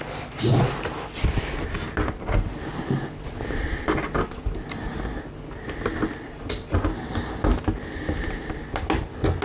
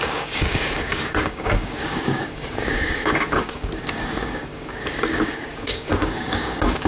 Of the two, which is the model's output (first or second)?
second